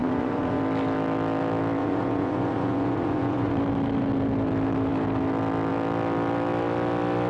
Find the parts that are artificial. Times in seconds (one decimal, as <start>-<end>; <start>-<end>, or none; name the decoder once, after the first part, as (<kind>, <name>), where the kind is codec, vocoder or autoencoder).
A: 0.0-0.6 (vocoder, Vocos); 1.8-3.5